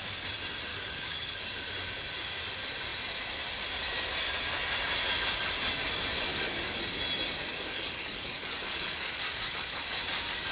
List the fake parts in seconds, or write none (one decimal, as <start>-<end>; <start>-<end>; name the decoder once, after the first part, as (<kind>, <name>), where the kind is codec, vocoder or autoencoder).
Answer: 0.7-1.4 (codec, DAC); 6.3-6.8; 7.5-10.0